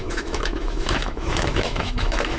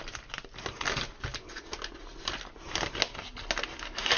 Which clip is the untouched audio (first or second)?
second